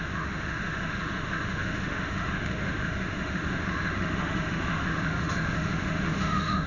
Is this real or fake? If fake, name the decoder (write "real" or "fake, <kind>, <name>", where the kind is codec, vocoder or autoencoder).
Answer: fake, autoencoder, DAC-VAE